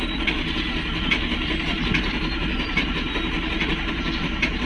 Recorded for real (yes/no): yes